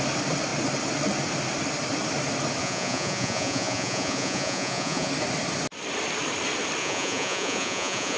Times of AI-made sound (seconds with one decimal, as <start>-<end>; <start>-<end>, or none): 2.6-5.1; 6.8-8.2